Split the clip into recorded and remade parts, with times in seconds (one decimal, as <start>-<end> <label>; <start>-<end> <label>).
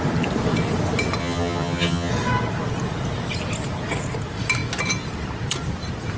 0.0-1.2 recorded; 1.2-2.1 remade; 2.1-6.2 recorded